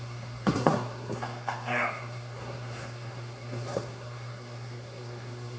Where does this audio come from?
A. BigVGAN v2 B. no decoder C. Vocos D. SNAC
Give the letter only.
D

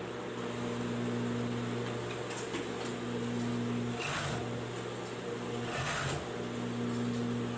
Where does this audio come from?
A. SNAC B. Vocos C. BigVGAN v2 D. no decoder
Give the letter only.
D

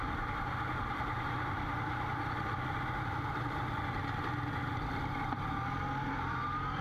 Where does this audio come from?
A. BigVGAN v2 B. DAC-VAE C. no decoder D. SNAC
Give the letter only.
C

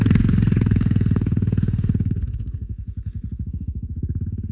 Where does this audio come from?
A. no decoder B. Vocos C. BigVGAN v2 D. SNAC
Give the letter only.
D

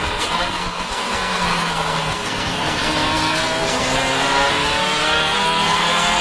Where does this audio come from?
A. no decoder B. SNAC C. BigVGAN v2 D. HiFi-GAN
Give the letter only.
B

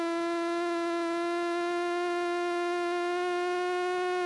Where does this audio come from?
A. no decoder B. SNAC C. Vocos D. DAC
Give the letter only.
A